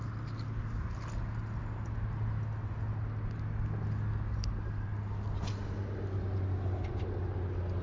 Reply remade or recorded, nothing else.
recorded